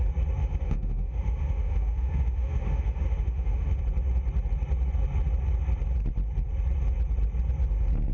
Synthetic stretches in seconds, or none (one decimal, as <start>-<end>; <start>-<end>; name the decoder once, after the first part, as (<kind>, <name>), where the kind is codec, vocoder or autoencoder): 0.4-3.8 (autoencoder, DAC-VAE)